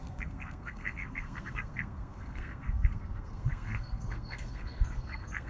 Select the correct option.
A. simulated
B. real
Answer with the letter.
A